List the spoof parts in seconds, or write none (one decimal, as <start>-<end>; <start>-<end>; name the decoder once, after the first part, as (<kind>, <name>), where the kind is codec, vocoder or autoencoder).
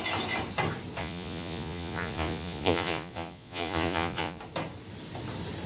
1.0-4.4 (vocoder, Vocos)